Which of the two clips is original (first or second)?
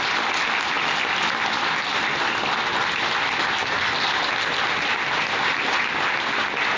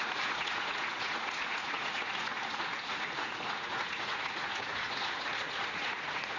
first